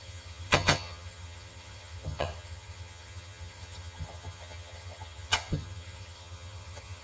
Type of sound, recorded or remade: remade